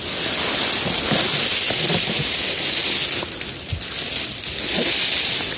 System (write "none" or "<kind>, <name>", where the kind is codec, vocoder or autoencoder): none